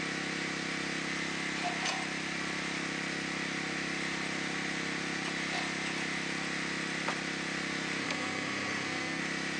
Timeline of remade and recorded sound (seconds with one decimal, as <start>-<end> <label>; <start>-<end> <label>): 0.0-8.0 recorded; 8.0-9.2 remade; 9.2-9.6 recorded